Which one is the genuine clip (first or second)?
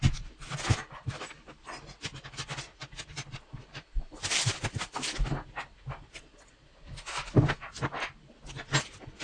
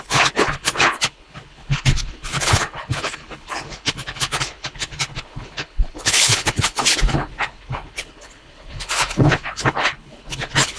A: first